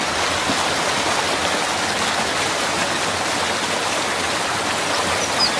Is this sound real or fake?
real